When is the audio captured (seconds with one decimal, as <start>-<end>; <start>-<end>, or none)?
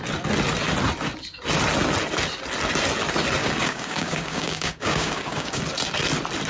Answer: 0.0-3.4; 5.6-6.5